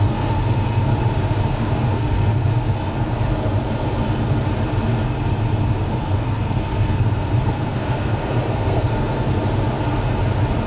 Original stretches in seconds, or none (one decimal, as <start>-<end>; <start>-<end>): 0.9-1.5; 2.5-5.9; 9.4-10.7